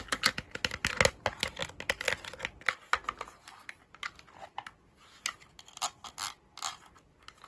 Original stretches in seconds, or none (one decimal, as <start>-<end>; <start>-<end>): 0.0-7.5